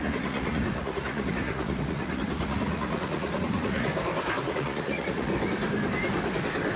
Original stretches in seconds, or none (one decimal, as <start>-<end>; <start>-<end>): 3.9-4.4; 5.3-6.8